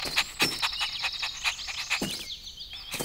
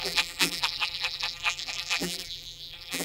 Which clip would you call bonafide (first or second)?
first